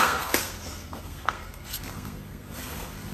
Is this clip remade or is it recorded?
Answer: remade